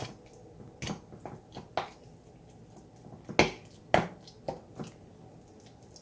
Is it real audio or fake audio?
real